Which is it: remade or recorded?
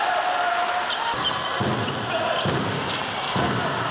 recorded